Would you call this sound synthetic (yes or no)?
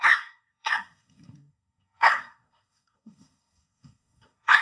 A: yes